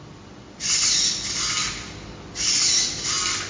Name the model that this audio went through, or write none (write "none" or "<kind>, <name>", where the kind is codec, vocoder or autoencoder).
none